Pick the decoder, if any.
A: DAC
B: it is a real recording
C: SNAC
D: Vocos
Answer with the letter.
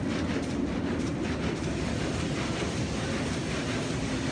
B